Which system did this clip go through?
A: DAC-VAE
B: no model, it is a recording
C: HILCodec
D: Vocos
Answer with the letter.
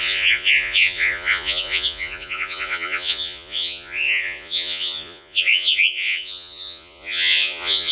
D